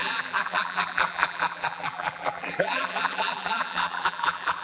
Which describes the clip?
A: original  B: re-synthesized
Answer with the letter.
B